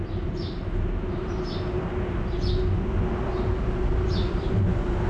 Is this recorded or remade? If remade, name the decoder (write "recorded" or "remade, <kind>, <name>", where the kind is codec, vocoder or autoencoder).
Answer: recorded